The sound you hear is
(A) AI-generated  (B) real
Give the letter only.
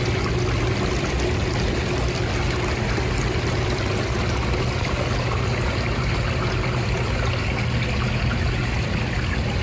B